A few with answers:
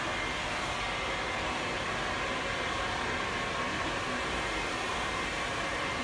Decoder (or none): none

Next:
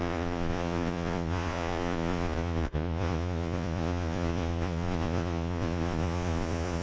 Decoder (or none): vocoder, Vocos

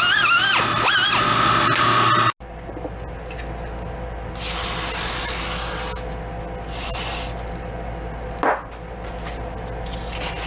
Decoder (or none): none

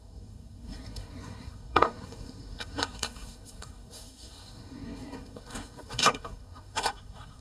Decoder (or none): codec, SNAC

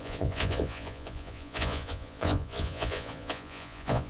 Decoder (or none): vocoder, Vocos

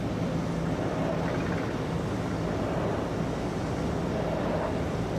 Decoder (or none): none